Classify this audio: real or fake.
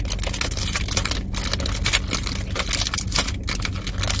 real